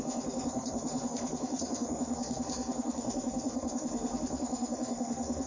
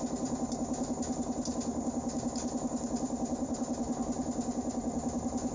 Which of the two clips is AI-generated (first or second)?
first